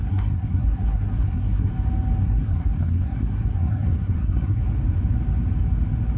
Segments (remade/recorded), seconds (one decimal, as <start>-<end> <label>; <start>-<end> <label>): 0.0-1.7 remade; 1.7-2.2 recorded; 2.2-4.6 remade; 4.6-6.2 recorded